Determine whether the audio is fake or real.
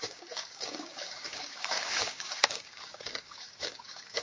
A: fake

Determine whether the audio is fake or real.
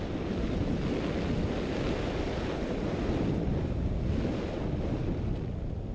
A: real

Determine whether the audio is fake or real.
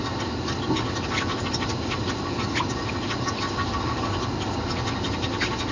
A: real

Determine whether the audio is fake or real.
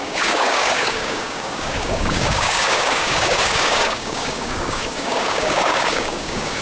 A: fake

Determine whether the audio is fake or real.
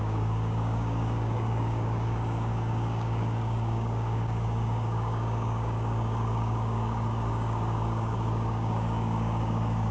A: fake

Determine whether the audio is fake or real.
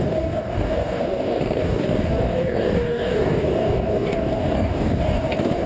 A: fake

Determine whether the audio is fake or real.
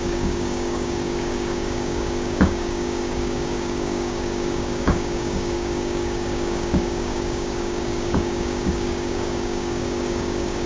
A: fake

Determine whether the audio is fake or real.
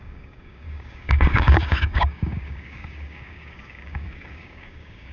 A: fake